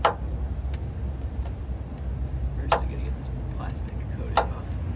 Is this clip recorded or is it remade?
recorded